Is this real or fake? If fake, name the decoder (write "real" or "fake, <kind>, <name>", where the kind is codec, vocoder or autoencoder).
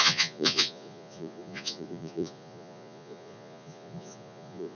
fake, vocoder, Vocos